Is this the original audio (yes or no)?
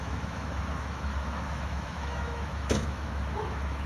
no